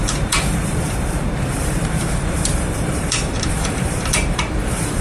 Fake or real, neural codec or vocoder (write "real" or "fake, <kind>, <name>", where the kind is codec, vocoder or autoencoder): fake, vocoder, BigVGAN v2